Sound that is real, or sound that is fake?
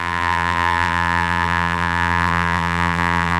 fake